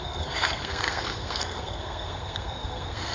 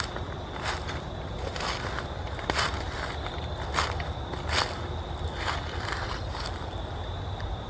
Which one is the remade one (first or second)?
first